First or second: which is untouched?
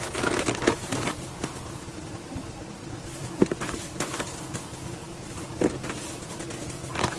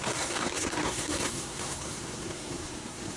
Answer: first